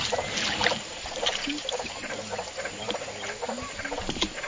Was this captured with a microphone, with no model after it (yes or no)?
no